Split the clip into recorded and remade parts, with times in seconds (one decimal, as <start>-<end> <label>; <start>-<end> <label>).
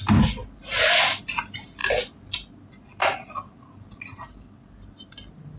0.0-5.6 recorded